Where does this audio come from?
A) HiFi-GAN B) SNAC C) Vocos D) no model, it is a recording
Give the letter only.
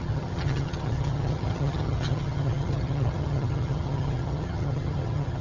A